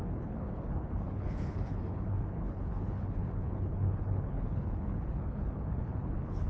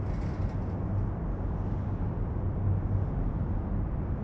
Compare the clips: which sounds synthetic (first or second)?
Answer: first